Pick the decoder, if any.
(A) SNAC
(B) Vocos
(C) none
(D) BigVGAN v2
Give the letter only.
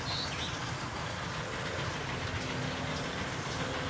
C